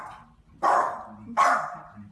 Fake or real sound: real